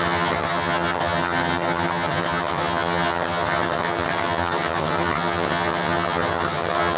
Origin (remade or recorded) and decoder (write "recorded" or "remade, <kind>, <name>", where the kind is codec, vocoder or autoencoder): remade, vocoder, HiFi-GAN